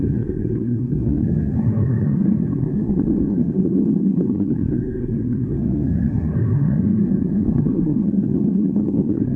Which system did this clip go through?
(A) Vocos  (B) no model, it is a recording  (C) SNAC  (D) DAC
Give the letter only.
C